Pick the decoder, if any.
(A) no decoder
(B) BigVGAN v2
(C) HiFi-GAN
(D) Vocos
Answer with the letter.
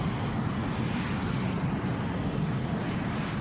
A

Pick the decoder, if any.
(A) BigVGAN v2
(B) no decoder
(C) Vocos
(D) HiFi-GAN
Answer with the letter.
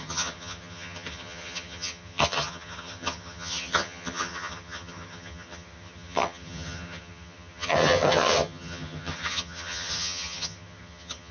D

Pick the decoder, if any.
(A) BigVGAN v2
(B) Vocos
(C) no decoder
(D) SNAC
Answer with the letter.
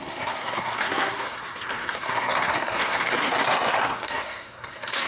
D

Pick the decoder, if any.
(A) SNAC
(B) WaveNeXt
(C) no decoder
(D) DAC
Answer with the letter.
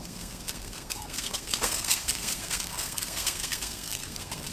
A